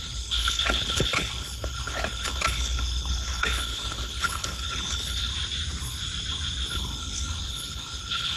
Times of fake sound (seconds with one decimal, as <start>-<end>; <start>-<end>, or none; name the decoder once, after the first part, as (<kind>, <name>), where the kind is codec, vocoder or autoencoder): 0.0-5.3 (codec, HILCodec); 6.7-8.4